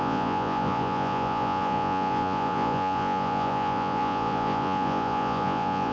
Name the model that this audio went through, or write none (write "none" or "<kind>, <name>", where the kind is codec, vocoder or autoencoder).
vocoder, Vocos